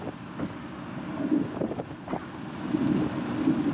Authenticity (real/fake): real